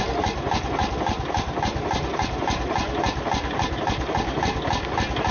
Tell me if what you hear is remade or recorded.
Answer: recorded